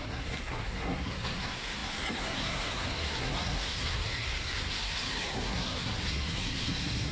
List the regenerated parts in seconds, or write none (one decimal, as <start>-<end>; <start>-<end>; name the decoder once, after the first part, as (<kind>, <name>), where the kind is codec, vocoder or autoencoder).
0.0-7.1 (codec, SNAC)